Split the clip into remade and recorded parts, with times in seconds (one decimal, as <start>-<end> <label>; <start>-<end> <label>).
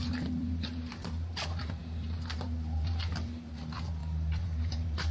0.0-5.1 remade